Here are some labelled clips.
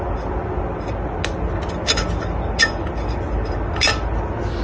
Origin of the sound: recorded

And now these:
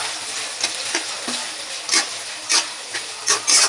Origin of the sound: recorded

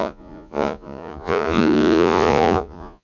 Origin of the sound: remade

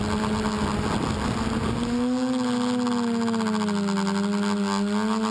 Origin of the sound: recorded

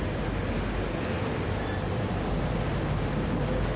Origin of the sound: recorded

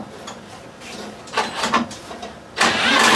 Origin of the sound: remade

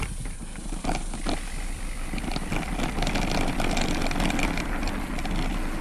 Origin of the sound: recorded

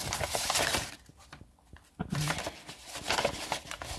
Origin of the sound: recorded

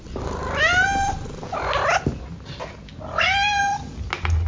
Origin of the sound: recorded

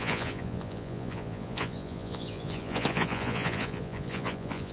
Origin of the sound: remade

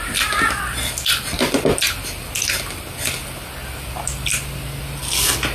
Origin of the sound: recorded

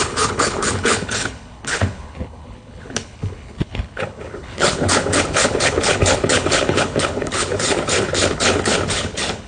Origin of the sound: remade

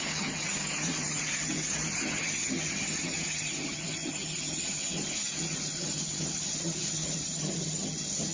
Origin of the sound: remade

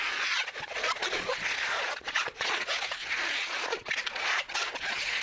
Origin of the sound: remade